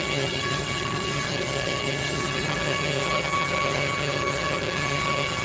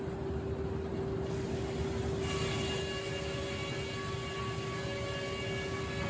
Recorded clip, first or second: second